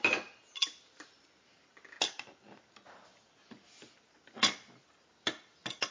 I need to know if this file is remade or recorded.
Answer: recorded